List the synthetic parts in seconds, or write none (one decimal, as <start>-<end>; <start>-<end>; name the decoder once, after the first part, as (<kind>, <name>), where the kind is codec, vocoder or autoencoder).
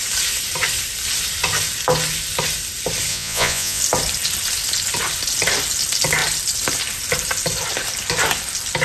3.1-3.8 (vocoder, Vocos)